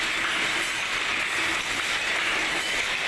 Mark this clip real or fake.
real